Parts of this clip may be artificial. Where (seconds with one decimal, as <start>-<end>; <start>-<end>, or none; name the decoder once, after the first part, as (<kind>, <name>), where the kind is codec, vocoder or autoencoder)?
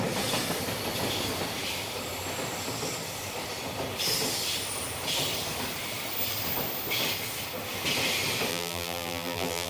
8.5-9.7 (vocoder, BigVGAN v2)